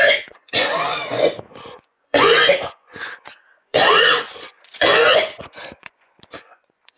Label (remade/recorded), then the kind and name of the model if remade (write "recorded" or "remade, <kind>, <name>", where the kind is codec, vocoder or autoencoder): remade, vocoder, Vocos